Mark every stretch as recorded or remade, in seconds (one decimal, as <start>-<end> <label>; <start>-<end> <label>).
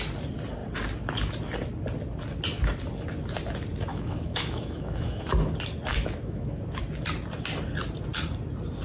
0.0-3.9 recorded; 3.9-5.3 remade; 5.3-5.9 recorded; 5.9-6.6 remade; 6.6-8.8 recorded